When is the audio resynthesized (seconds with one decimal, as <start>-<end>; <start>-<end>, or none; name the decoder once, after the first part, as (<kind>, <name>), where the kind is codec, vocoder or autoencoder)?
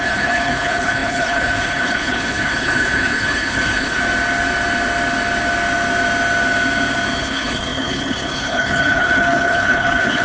0.0-4.0 (codec, HILCodec); 7.2-10.2